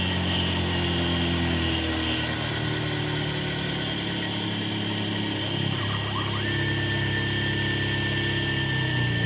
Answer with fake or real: real